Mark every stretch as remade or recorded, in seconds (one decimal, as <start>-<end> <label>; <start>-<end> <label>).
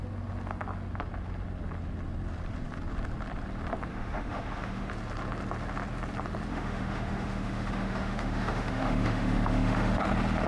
0.0-3.9 recorded; 3.9-4.9 remade; 4.9-6.5 recorded; 6.5-10.1 remade; 10.1-10.5 recorded